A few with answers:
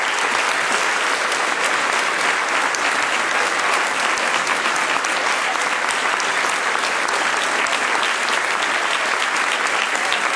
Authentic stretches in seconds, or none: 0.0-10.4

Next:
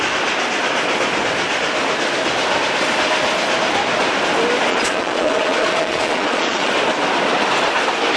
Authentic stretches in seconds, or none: 0.0-4.7; 6.7-8.2